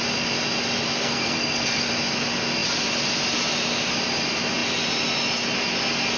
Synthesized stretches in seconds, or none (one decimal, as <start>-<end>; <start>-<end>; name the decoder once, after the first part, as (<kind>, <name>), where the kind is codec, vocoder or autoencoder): 1.0-1.9 (codec, SNAC)